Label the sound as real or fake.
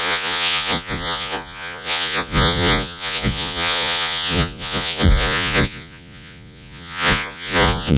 fake